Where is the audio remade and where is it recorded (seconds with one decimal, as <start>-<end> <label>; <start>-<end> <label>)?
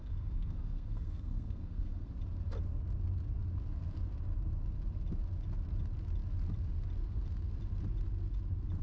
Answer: 0.0-2.1 remade; 2.1-8.8 recorded